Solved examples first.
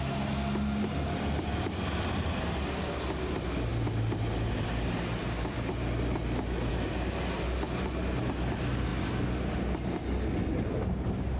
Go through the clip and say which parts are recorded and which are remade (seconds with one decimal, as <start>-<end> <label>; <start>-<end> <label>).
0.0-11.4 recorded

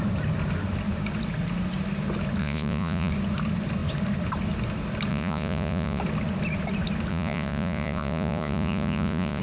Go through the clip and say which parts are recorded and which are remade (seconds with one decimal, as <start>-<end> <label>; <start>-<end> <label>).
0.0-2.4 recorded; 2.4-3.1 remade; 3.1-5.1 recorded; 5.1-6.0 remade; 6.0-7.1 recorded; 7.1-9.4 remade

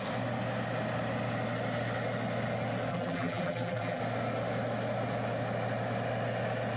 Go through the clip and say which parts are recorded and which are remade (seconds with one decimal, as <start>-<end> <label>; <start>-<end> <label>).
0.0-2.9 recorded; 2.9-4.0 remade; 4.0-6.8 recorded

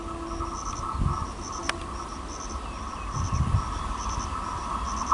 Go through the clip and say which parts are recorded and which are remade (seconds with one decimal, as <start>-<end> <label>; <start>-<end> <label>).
0.0-5.1 recorded

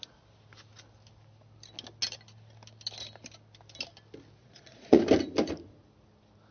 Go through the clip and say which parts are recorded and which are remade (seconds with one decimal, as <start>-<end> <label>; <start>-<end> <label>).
0.0-4.4 recorded; 4.4-5.0 remade; 5.0-6.5 recorded

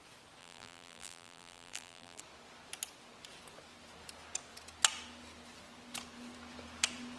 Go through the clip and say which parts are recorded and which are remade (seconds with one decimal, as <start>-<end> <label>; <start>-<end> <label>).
0.0-0.4 recorded; 0.4-2.2 remade; 2.2-7.2 recorded